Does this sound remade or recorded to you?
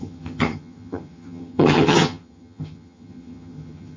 remade